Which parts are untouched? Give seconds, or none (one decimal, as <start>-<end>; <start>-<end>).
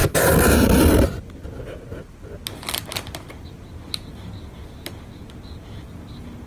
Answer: 0.0-6.5